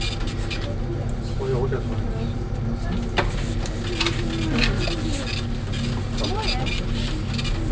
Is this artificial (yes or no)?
no